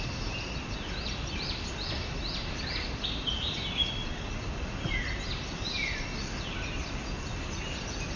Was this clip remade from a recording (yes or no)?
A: no